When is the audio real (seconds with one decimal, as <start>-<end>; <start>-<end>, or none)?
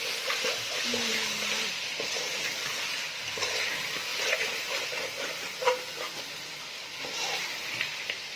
0.0-1.1; 2.0-8.4